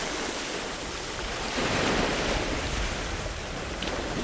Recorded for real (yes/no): yes